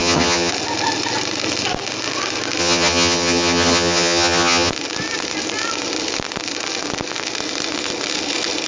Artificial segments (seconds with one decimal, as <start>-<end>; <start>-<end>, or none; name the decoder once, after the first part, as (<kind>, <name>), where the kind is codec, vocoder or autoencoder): 0.0-0.5 (vocoder, HiFi-GAN); 2.6-4.7